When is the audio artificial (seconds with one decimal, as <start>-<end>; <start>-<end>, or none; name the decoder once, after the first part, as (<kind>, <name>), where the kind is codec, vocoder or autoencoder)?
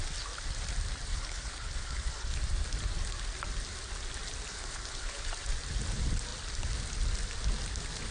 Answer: 1.1-2.4 (codec, HILCodec); 4.5-5.3